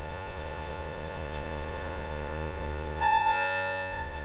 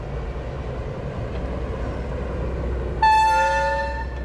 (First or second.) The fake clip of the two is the first